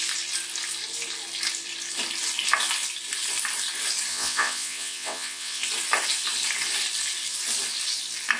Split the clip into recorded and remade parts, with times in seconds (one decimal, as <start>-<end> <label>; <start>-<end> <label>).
0.0-4.1 recorded; 4.1-5.6 remade; 5.6-8.4 recorded